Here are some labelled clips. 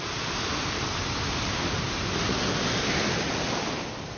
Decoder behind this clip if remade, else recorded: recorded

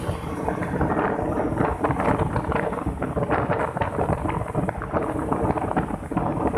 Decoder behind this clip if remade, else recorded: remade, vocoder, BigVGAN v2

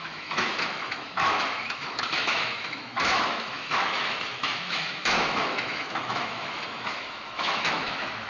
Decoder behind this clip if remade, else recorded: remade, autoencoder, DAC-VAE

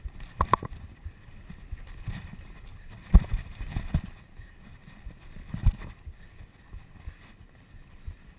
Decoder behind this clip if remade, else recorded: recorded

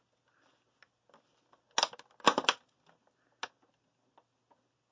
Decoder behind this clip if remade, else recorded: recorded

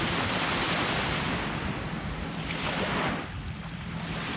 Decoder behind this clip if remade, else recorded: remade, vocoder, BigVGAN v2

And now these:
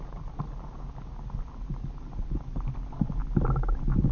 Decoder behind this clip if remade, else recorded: recorded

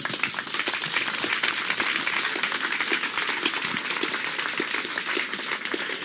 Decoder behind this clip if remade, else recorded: recorded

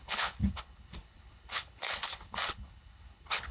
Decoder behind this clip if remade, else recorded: remade, codec, HILCodec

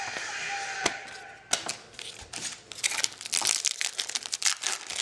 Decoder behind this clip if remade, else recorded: recorded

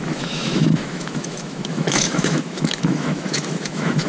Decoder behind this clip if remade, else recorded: remade, autoencoder, DAC-VAE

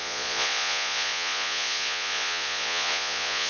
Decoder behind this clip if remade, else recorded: remade, vocoder, Vocos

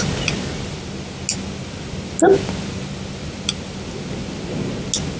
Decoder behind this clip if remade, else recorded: recorded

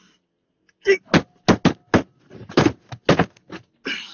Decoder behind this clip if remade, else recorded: recorded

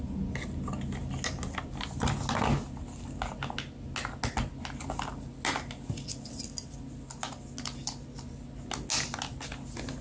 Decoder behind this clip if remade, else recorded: recorded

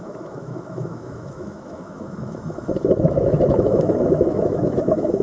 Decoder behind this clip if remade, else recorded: remade, autoencoder, DAC-VAE